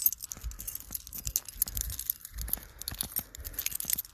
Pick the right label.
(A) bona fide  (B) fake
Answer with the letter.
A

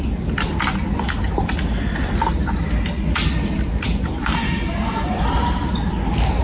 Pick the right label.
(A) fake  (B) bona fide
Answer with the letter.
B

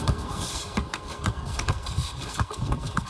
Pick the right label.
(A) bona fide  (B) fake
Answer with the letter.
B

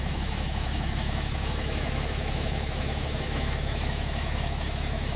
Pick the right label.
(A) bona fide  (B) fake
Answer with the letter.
B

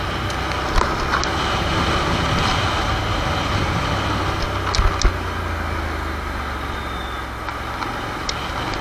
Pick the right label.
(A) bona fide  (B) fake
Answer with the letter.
A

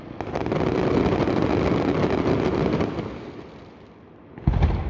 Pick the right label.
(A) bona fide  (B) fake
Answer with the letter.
A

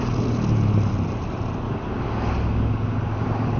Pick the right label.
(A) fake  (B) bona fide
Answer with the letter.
B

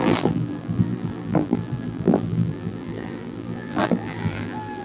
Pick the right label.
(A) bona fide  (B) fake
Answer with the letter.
B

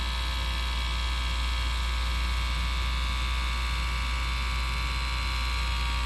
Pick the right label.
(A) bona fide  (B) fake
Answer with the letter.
A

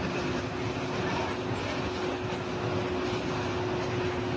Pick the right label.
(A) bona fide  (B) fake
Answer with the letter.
A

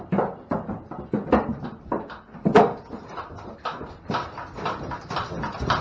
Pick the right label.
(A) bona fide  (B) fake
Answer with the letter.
A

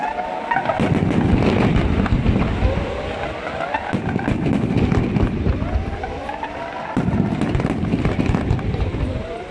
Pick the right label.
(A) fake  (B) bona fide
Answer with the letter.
B